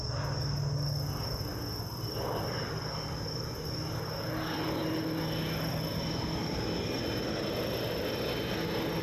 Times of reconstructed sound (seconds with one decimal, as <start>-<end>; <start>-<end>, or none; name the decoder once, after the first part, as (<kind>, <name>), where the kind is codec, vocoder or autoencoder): none